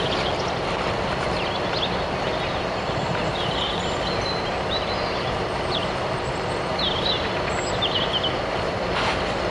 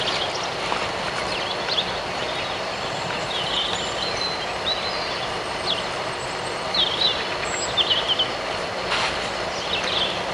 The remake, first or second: first